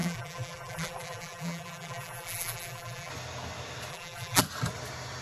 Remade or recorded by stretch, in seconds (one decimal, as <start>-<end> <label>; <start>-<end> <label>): 0.0-3.1 remade; 3.1-3.9 recorded; 3.9-4.4 remade; 4.4-5.2 recorded